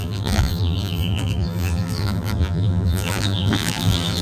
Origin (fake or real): fake